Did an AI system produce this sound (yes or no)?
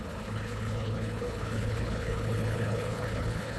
yes